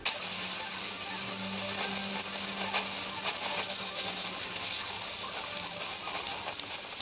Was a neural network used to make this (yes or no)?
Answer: no